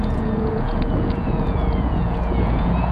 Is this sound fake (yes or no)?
yes